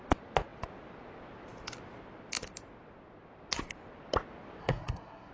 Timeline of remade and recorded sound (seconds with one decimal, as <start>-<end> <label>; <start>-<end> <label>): 0.0-4.6 recorded; 4.6-5.3 remade